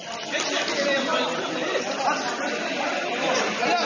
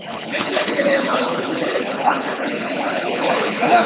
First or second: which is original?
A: first